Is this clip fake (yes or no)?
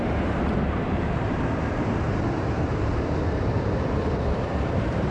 yes